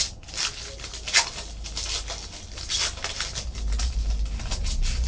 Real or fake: real